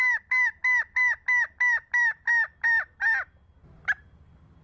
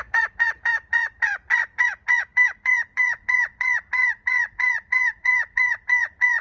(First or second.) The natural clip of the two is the first